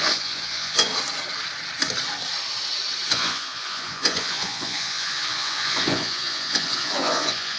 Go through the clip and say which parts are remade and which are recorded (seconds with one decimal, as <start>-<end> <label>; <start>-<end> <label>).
0.0-0.9 remade; 0.9-3.1 recorded; 3.1-7.6 remade